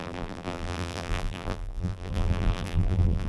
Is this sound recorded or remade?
remade